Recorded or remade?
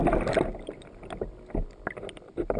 recorded